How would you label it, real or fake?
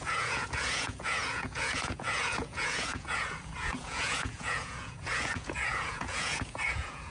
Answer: fake